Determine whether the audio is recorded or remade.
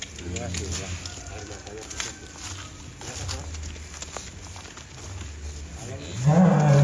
recorded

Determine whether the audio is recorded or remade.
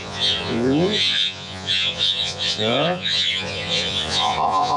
remade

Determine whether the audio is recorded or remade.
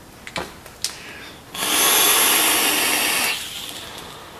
recorded